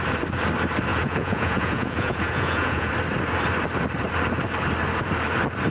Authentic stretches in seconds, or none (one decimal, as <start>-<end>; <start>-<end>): 0.0-0.9; 2.9-5.7